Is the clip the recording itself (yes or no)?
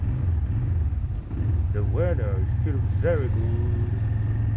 yes